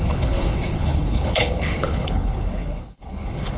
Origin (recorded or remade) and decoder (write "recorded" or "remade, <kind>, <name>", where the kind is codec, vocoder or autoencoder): remade, codec, HILCodec